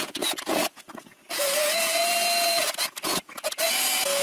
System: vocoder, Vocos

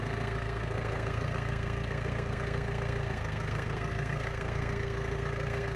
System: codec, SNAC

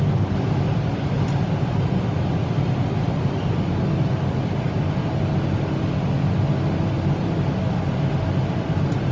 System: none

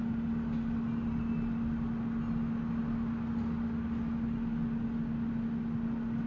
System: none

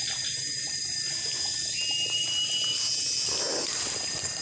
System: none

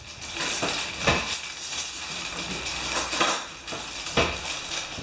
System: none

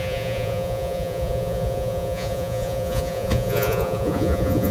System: vocoder, Vocos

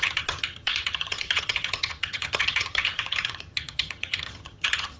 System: vocoder, HiFi-GAN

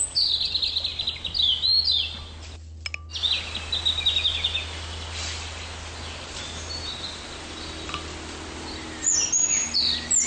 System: none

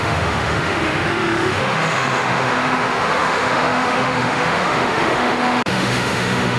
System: autoencoder, DAC-VAE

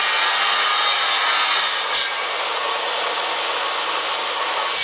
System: none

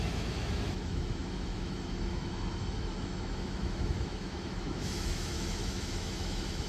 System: autoencoder, DAC-VAE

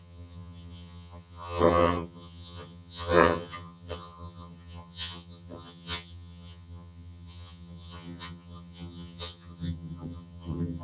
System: vocoder, HiFi-GAN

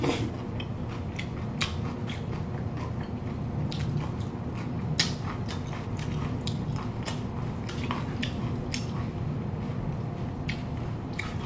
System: none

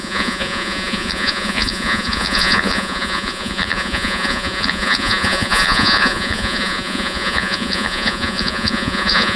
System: vocoder, Vocos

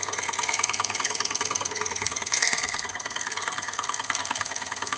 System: codec, SNAC